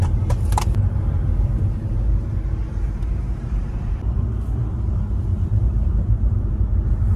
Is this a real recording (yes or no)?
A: no